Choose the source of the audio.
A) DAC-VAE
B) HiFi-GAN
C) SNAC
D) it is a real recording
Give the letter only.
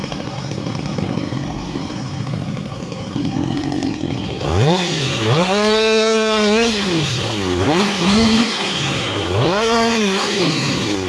C